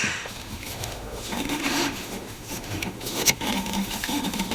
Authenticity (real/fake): fake